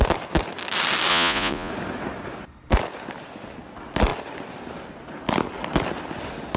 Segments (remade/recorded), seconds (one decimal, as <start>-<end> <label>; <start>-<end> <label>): 0.0-1.1 recorded; 1.1-1.7 remade; 1.7-6.6 recorded